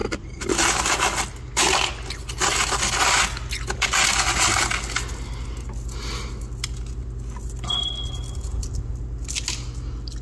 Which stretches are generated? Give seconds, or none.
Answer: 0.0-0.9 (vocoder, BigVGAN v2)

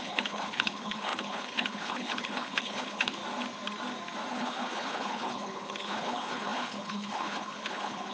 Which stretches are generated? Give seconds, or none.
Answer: 0.0-3.2 (codec, HILCodec); 4.3-8.1

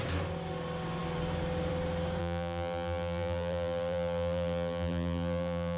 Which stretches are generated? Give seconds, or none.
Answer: 2.2-5.8 (vocoder, BigVGAN v2)

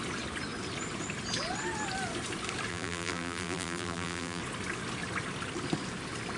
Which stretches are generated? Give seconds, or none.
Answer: 2.7-4.4 (vocoder, BigVGAN v2)

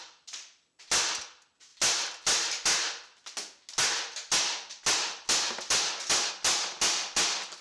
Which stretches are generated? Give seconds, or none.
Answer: 0.0-0.5 (vocoder, BigVGAN v2)

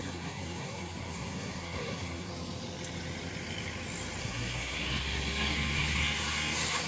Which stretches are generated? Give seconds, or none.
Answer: 0.0-2.3 (codec, SNAC); 4.2-6.9

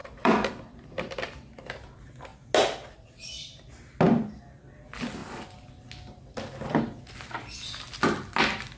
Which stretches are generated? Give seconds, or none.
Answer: 0.0-1.6 (vocoder, BigVGAN v2)